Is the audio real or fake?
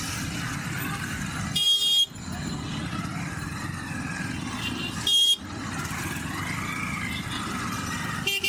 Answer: real